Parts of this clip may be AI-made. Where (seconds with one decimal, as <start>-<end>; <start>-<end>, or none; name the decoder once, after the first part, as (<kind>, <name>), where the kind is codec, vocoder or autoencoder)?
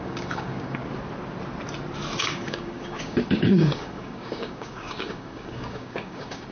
0.0-0.8 (codec, DAC); 2.2-6.5